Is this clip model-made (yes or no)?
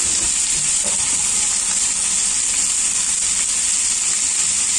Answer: no